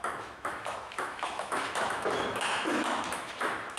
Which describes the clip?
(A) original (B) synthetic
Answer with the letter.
B